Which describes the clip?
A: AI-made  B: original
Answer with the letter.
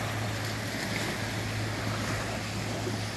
B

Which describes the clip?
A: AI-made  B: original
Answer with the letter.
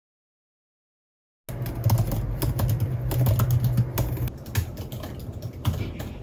B